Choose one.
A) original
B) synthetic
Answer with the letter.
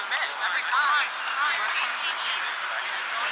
A